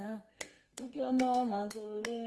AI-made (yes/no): yes